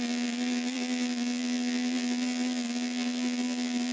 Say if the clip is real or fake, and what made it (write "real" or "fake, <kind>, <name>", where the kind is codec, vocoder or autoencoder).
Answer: fake, vocoder, BigVGAN v2